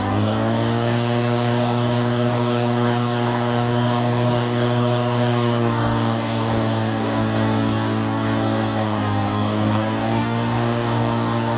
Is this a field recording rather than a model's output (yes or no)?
no